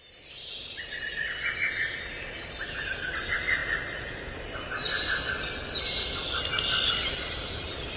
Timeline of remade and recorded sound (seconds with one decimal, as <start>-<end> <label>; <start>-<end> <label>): 0.0-8.0 recorded